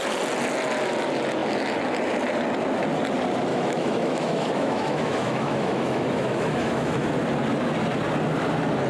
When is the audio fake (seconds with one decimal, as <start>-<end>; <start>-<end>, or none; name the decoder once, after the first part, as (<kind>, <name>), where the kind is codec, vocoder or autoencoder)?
3.5-7.1 (autoencoder, DAC-VAE)